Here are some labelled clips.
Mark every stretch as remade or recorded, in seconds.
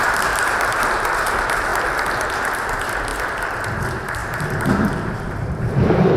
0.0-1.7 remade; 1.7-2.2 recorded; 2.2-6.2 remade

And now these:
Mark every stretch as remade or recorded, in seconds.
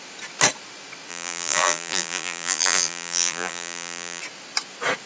0.0-1.1 recorded; 1.1-4.2 remade; 4.2-5.1 recorded